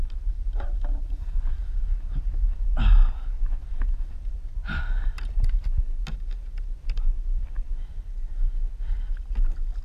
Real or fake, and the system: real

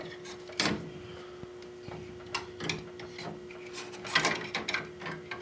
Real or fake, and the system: real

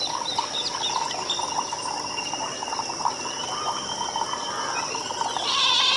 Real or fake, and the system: real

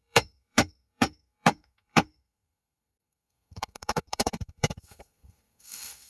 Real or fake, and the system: fake, codec, SNAC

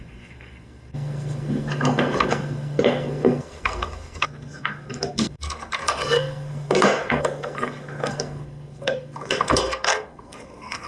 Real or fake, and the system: fake, codec, SNAC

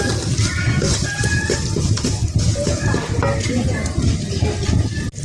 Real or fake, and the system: real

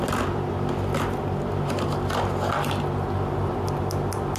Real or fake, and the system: real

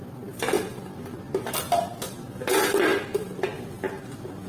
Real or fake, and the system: real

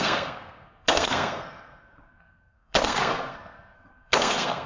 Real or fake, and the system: fake, codec, SNAC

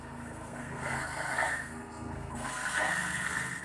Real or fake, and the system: fake, codec, SNAC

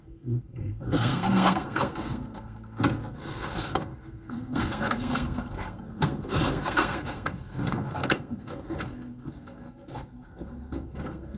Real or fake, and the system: fake, codec, SNAC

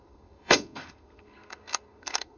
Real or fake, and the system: fake, codec, SNAC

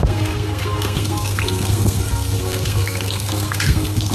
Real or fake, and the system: fake, codec, SNAC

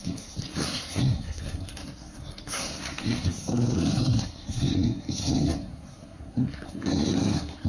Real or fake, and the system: fake, codec, SNAC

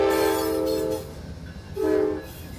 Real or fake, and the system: real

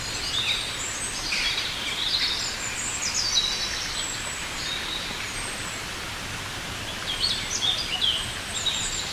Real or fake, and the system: real